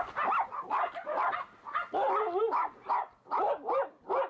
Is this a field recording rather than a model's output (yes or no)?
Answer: yes